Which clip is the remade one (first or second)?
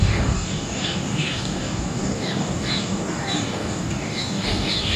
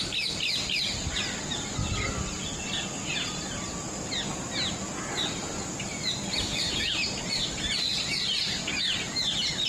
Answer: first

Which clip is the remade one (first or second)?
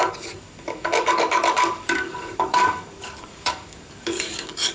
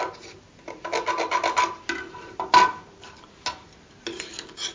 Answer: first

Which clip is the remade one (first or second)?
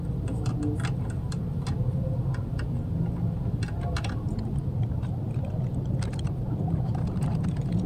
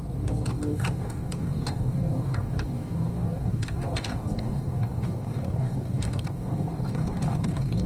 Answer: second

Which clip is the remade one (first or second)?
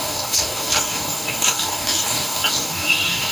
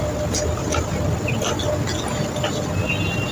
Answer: first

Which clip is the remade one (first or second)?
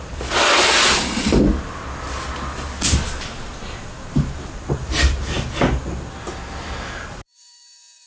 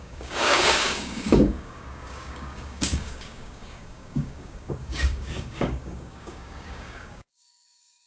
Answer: second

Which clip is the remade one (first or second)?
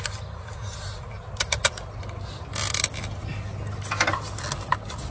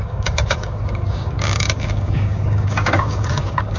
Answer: second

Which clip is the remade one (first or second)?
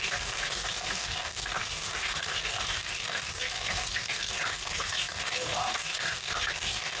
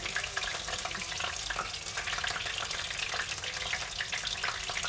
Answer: first